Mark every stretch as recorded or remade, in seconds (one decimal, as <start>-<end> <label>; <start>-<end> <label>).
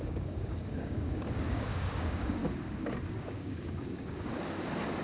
0.0-2.4 remade; 2.4-3.2 recorded; 3.2-4.3 remade; 4.3-5.0 recorded